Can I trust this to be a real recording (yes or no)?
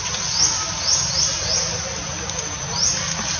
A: yes